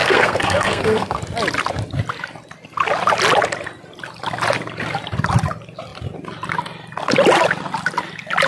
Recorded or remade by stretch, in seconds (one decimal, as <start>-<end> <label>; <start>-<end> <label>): 0.0-1.2 remade; 1.2-8.5 recorded